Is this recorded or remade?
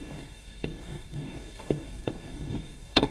remade